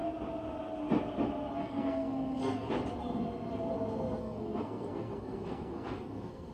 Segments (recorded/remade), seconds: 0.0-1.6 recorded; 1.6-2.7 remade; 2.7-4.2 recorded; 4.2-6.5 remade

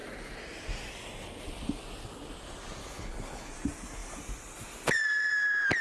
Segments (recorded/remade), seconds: 0.0-2.8 recorded; 2.8-3.5 remade; 3.5-5.8 recorded

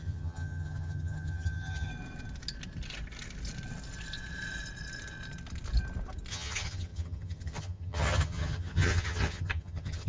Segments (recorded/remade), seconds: 0.0-1.9 remade; 1.9-6.3 recorded; 6.3-10.1 remade

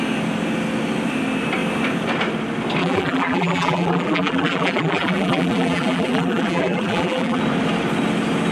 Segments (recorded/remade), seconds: 0.0-2.8 recorded; 2.8-7.4 remade; 7.4-8.5 recorded